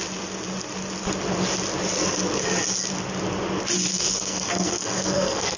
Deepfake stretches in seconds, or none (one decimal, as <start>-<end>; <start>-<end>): 3.9-5.6